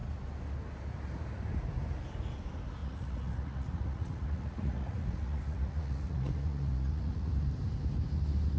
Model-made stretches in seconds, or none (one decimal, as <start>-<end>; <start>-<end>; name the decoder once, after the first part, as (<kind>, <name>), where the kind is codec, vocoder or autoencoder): 2.8-7.3 (vocoder, Vocos)